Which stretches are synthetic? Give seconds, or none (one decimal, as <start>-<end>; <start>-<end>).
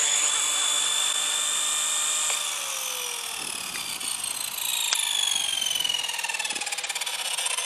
none